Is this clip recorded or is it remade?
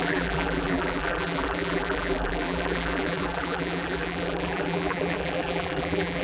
remade